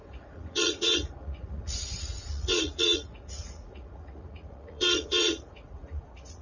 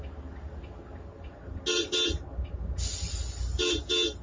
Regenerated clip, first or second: first